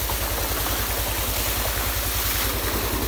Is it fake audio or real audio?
real